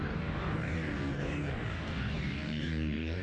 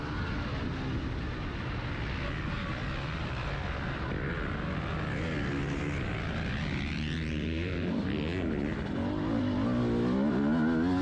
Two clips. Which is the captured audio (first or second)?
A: second